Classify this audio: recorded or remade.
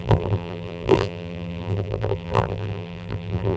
remade